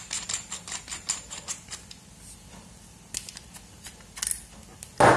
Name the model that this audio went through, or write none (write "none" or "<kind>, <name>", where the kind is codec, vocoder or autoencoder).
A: none